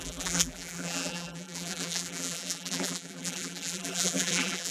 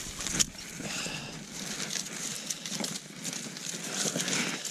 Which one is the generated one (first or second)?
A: first